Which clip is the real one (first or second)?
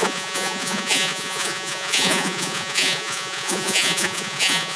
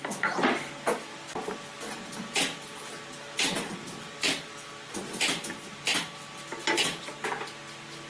second